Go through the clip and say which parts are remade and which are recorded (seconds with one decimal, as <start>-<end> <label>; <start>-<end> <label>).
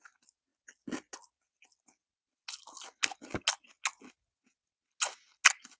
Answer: 0.0-5.8 recorded